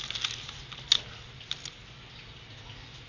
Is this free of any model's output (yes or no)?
yes